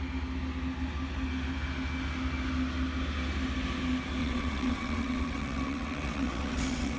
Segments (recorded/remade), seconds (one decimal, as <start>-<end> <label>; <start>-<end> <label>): 0.0-4.2 recorded; 4.2-7.0 remade